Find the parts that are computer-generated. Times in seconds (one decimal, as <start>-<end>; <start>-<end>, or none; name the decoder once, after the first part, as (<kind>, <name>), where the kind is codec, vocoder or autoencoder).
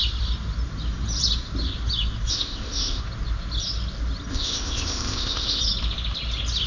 2.3-3.0 (codec, ZipCodec); 4.3-5.6